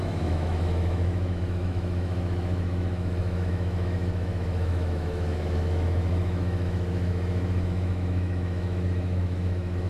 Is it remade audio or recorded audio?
remade